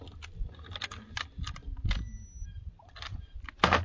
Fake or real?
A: real